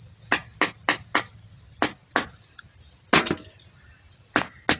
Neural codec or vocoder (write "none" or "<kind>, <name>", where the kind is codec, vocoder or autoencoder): none